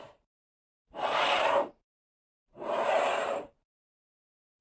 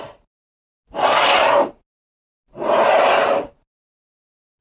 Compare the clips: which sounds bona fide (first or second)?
second